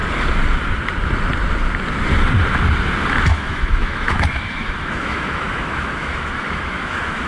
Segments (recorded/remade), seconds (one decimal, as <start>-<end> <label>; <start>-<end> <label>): 0.0-3.3 recorded; 3.3-7.3 remade